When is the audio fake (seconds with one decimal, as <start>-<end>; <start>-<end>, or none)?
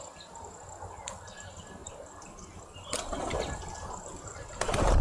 1.8-5.0